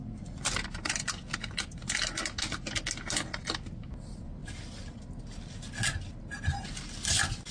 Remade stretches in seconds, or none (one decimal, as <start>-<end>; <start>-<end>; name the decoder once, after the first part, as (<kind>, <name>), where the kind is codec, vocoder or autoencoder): none